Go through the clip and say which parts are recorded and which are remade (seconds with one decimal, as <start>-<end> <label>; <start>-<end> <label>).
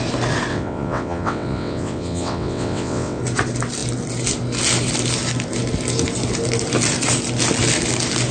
0.0-0.5 recorded; 0.5-3.2 remade; 3.2-8.3 recorded